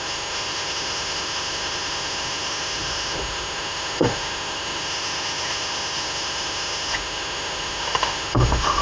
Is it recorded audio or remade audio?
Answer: remade